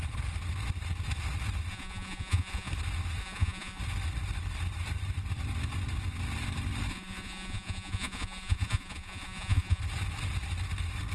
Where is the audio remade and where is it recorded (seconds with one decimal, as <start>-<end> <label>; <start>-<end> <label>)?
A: 0.0-1.7 recorded; 1.7-2.7 remade; 2.7-3.2 recorded; 3.2-3.8 remade; 3.8-6.9 recorded; 6.9-9.8 remade; 9.8-11.1 recorded